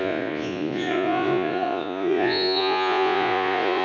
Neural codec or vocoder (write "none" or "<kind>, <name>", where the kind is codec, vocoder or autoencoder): vocoder, Vocos